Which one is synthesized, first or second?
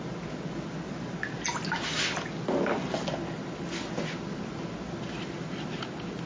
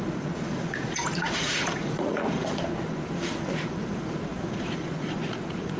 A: second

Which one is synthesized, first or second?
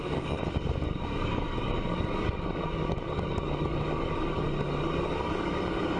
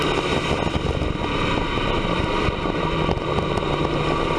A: first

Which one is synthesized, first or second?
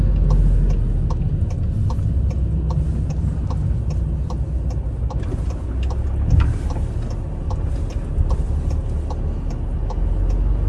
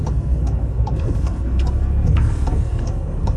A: second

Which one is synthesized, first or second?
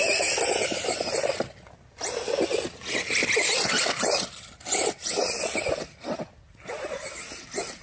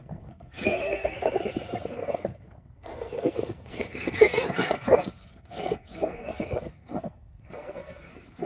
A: second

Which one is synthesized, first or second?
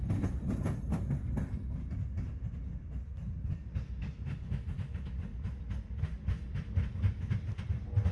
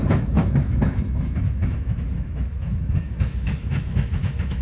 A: second